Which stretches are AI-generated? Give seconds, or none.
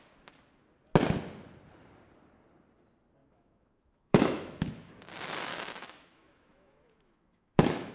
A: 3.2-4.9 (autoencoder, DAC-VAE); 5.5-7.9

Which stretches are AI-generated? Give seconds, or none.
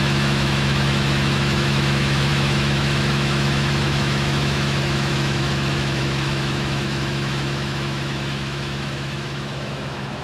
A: 0.0-10.2 (autoencoder, DAC-VAE)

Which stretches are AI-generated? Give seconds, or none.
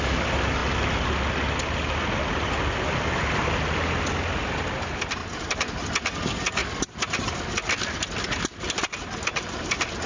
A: 5.2-5.7 (vocoder, BigVGAN v2); 6.6-7.3; 9.0-9.7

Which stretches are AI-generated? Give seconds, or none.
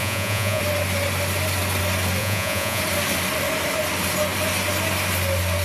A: 0.0-0.6 (vocoder, Vocos); 2.2-2.8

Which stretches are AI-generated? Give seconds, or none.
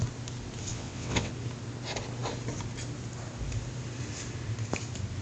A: 0.7-1.3 (vocoder, WaveNeXt)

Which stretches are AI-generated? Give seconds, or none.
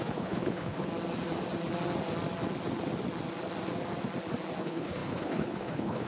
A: 0.0-0.9 (codec, HILCodec); 4.6-6.1